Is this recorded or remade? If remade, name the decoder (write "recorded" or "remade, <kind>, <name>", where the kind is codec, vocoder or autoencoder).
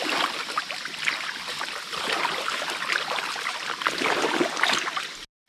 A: recorded